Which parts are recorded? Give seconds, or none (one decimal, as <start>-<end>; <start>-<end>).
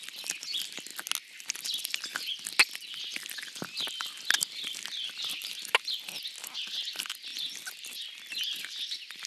0.0-5.0; 5.7-9.3